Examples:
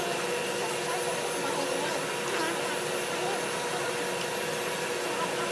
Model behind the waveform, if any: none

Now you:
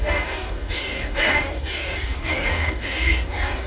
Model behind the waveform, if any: codec, DAC